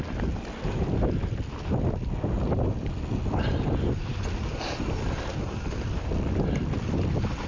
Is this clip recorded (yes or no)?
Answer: yes